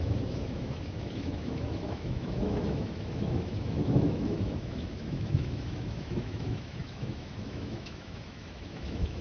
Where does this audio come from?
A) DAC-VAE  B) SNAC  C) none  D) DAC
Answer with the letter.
A